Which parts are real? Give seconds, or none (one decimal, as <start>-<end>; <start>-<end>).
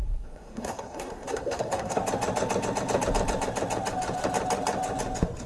2.0-5.5